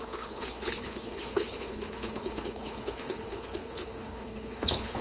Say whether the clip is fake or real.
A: fake